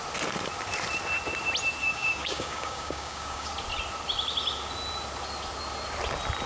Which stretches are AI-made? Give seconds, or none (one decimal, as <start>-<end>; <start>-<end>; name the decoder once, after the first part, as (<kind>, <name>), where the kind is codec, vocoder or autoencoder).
1.8-3.5 (codec, DAC)